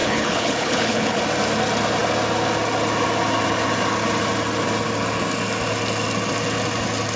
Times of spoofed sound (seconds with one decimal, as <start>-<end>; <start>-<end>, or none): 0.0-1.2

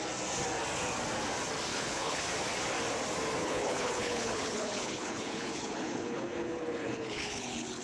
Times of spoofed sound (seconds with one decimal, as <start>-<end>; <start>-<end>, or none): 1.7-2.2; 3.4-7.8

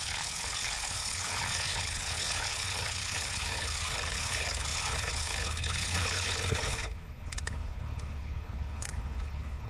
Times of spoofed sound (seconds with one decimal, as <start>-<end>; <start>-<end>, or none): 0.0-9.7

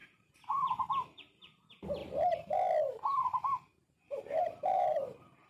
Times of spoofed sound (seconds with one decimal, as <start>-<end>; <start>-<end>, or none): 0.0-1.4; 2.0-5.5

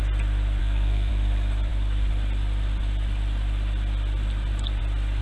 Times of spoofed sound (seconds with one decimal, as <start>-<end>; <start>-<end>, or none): 0.6-1.1